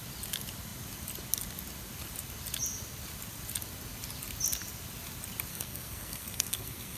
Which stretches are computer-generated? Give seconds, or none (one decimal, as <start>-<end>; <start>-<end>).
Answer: 5.5-7.0